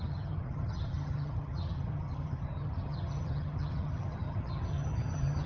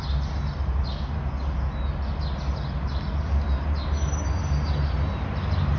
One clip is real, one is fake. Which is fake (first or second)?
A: first